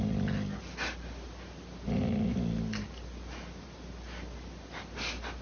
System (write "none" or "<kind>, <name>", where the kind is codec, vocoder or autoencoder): none